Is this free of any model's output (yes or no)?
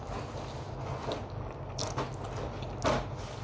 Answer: yes